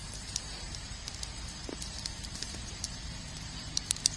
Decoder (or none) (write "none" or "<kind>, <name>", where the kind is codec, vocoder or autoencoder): vocoder, BigVGAN v2